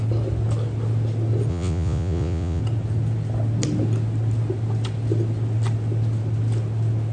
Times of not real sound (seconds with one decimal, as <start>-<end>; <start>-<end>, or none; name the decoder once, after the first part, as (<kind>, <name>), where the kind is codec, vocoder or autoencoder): 1.5-2.6 (vocoder, Vocos)